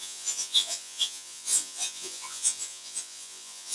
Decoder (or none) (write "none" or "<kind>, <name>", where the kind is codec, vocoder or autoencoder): vocoder, Vocos